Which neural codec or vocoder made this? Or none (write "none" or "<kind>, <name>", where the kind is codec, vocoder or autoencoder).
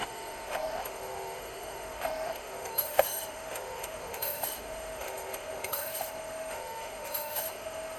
autoencoder, DAC-VAE